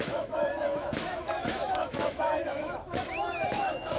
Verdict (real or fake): fake